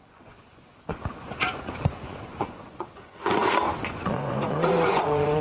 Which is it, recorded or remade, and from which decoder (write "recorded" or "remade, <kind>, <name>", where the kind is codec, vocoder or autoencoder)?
remade, vocoder, Vocos